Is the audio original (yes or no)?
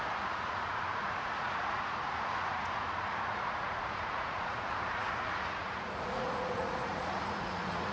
no